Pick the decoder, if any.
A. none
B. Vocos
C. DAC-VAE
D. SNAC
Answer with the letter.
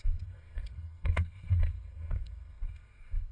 D